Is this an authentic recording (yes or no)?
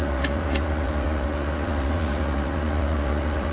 no